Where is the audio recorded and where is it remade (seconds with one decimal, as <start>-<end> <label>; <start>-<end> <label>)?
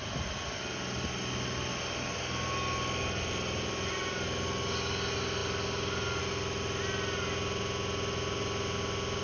0.0-9.2 recorded